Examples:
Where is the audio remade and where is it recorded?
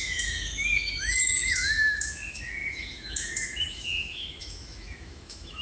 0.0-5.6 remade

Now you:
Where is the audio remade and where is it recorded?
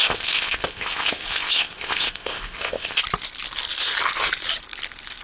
0.0-3.0 remade; 3.0-5.2 recorded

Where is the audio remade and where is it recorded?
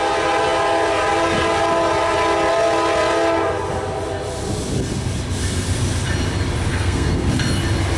0.0-6.7 recorded; 6.7-7.4 remade; 7.4-8.0 recorded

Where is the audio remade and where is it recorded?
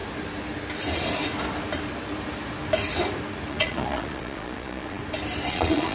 0.0-3.5 recorded; 3.5-5.0 remade; 5.0-5.5 recorded; 5.5-5.9 remade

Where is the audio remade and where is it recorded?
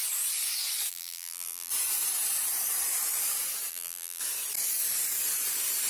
0.0-0.9 recorded; 0.9-1.7 remade; 1.7-3.7 recorded; 3.7-4.2 remade; 4.2-5.9 recorded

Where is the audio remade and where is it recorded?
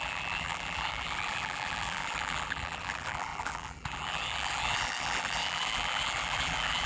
0.0-6.9 remade